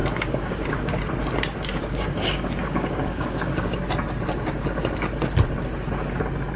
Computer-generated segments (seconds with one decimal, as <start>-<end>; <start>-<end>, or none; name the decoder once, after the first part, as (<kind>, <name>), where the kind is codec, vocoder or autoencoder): 0.0-0.9 (codec, DAC); 1.7-3.7